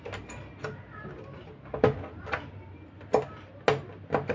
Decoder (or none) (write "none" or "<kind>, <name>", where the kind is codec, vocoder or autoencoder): none